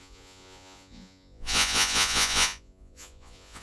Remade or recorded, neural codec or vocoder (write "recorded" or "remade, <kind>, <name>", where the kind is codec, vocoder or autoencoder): remade, vocoder, Vocos